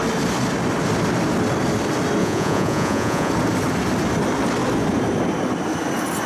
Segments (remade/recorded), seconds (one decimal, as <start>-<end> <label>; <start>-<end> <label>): 0.0-2.2 recorded; 2.2-3.3 remade; 3.3-6.3 recorded